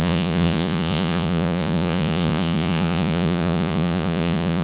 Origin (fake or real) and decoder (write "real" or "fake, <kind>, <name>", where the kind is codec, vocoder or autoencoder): fake, vocoder, Vocos